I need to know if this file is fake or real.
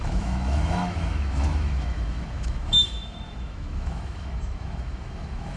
fake